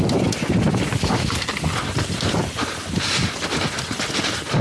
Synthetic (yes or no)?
no